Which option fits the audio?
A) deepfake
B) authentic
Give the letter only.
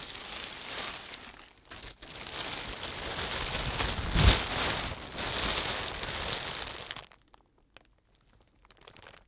B